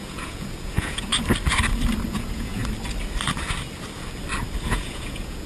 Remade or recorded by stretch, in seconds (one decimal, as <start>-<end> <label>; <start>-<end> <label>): 0.0-1.1 remade; 1.1-2.1 recorded; 2.1-2.6 remade; 2.6-4.6 recorded; 4.6-5.5 remade